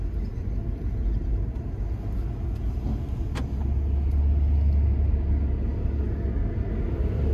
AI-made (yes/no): no